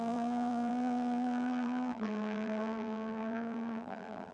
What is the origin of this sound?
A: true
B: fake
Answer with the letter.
B